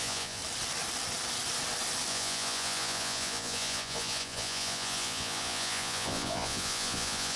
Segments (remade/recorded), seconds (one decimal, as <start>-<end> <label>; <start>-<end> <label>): 0.0-0.4 remade; 0.4-2.1 recorded; 2.1-7.4 remade